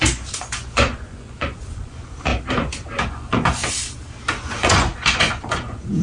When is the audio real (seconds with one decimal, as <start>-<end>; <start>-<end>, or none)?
2.3-3.1; 3.6-4.3